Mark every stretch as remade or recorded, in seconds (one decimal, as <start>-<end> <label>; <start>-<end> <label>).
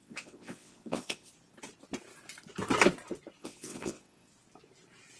0.0-1.3 remade; 1.3-3.4 recorded; 3.4-4.3 remade; 4.3-5.2 recorded